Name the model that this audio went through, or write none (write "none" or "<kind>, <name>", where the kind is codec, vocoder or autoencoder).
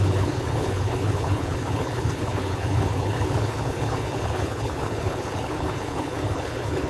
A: codec, HILCodec